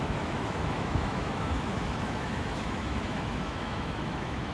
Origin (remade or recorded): remade